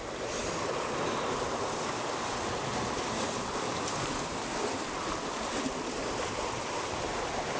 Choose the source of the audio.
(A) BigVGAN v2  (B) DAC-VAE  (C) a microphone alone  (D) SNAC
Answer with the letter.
C